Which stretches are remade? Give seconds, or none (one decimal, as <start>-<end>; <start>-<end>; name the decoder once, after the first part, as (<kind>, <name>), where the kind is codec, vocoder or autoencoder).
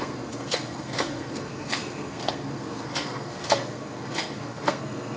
0.0-5.2 (codec, SNAC)